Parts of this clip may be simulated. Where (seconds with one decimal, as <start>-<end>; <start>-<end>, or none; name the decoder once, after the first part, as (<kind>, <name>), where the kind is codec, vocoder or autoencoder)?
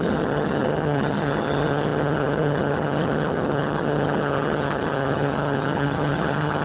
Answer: 0.0-6.6 (vocoder, HiFi-GAN)